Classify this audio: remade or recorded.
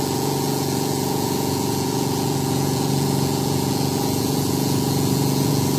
remade